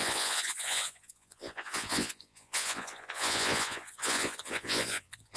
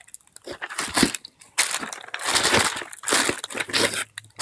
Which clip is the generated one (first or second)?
first